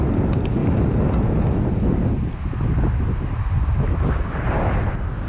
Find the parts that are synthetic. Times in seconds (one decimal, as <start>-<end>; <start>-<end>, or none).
none